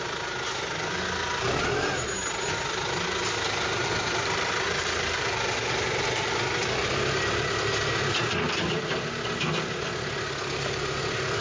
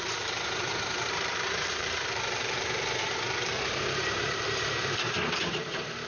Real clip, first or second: first